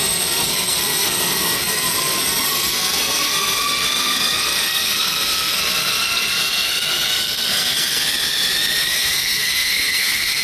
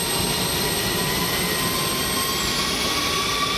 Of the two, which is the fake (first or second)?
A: first